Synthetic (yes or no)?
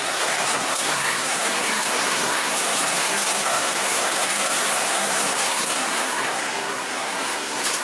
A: yes